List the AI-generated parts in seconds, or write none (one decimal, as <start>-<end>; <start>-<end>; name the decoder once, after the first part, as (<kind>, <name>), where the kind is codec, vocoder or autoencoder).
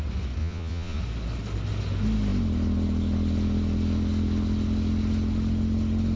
0.4-1.0 (vocoder, Vocos)